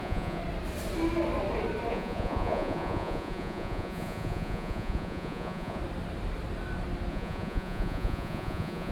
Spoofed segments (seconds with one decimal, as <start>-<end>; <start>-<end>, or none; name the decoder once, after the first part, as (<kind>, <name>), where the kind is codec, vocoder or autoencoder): 0.0-0.4 (vocoder, Vocos); 1.9-5.8; 7.1-8.9